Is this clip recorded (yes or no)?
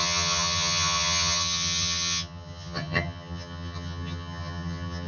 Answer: no